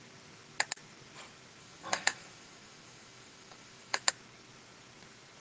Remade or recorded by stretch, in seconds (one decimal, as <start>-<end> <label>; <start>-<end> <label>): 0.0-1.6 recorded; 1.6-4.1 remade; 4.1-5.4 recorded